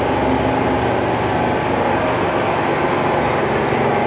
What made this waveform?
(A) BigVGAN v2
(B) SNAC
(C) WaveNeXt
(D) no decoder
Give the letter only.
D